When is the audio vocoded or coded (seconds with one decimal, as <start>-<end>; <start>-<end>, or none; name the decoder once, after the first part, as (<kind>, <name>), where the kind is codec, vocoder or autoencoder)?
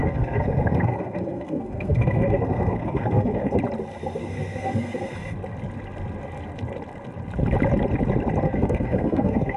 0.0-3.6 (codec, SNAC); 4.2-5.2; 8.4-9.6